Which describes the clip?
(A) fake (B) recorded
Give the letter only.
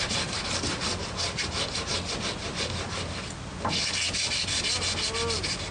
B